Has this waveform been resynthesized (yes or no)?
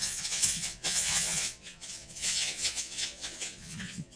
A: yes